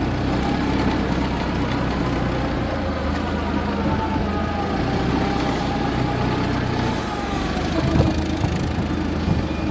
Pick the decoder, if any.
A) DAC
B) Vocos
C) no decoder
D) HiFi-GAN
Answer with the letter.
C